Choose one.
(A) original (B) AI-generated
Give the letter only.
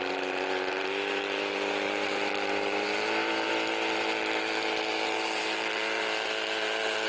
B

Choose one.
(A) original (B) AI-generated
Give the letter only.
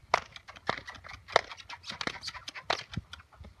A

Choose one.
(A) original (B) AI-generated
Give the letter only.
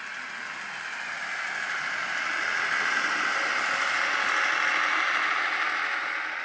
A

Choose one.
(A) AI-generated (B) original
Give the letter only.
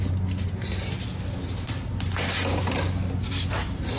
B